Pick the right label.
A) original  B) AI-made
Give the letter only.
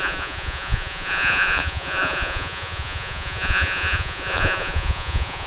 B